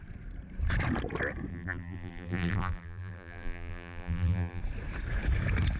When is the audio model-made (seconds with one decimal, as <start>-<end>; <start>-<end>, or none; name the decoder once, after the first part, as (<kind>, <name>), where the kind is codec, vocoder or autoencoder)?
1.5-4.6 (vocoder, BigVGAN v2)